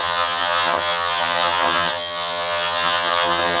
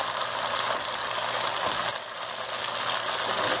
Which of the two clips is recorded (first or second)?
second